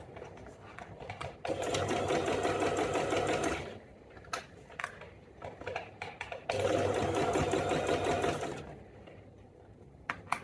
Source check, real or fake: real